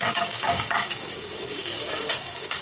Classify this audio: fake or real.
fake